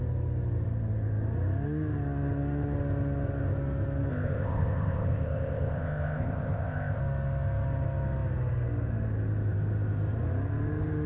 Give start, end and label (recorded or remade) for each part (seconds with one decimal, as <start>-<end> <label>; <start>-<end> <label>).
0.0-4.1 recorded; 4.1-7.0 remade; 7.0-11.1 recorded